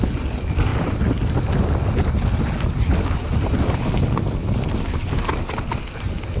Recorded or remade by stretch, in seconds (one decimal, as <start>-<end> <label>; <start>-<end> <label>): 0.0-6.4 recorded